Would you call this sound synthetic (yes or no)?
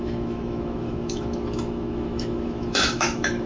yes